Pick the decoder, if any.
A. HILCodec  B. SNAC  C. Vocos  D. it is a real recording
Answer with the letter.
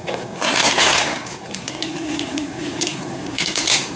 B